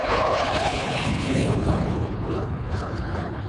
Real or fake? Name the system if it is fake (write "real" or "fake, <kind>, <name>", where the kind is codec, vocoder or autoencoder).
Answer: fake, codec, HILCodec